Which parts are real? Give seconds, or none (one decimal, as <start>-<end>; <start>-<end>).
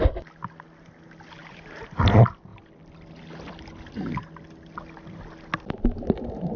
0.0-1.4; 2.0-6.6